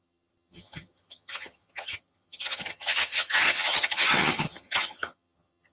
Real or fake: fake